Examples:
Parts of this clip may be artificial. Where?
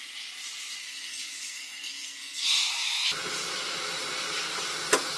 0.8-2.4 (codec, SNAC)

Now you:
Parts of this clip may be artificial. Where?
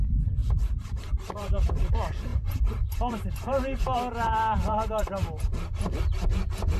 0.4-1.9 (vocoder, BigVGAN v2); 2.3-5.4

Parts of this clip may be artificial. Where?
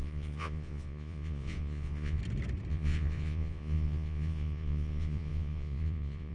0.0-2.2 (vocoder, Vocos); 2.7-6.3